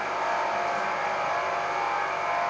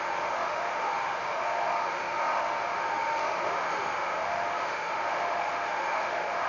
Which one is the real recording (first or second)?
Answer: first